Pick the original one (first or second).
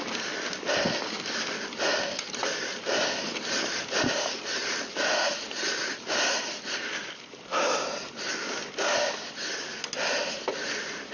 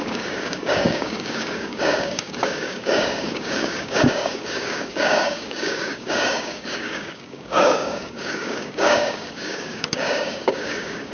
first